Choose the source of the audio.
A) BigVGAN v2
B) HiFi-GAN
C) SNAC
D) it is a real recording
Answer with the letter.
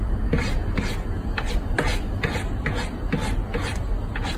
D